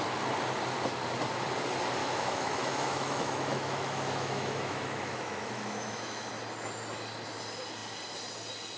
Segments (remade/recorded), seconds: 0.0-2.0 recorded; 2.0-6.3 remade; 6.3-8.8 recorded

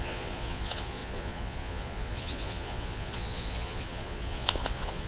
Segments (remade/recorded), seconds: 0.0-5.1 remade

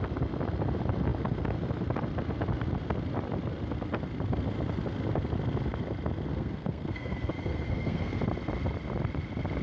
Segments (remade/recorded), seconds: 0.0-6.3 recorded; 6.3-8.2 remade; 8.2-9.6 recorded

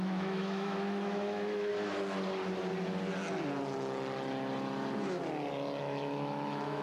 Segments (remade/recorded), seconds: 0.0-1.7 remade; 1.7-5.8 recorded; 5.8-6.8 remade

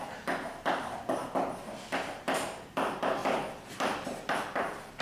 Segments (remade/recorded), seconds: 0.0-1.2 remade; 1.2-2.1 recorded; 2.1-3.2 remade; 3.2-3.7 recorded; 3.7-5.0 remade

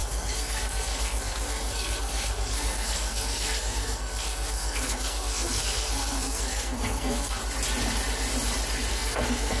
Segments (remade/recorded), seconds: 0.0-7.4 remade; 7.4-8.9 recorded; 8.9-9.6 remade

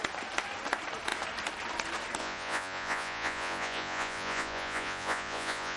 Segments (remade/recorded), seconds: 0.0-2.2 recorded; 2.2-5.8 remade